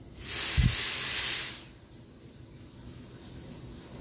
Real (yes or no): yes